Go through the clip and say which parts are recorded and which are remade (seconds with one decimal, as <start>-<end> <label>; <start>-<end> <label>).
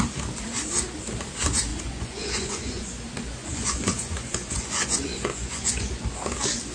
0.0-1.7 recorded; 1.7-2.9 remade; 2.9-3.4 recorded; 3.4-5.9 remade; 5.9-6.7 recorded